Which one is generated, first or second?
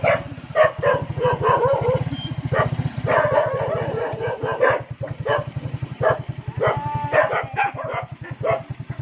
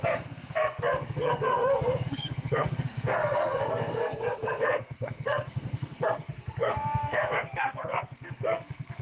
second